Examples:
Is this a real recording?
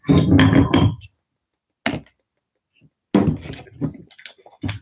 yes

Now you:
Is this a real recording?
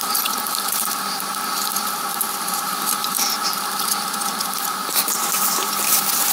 no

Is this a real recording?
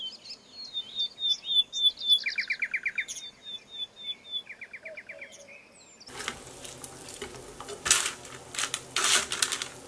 yes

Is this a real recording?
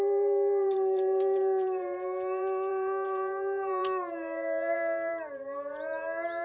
no